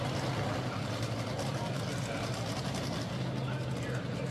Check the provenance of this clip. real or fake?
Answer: real